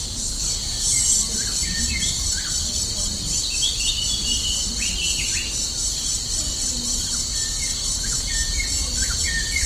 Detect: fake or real real